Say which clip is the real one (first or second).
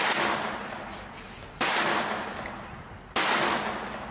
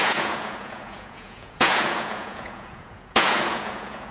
first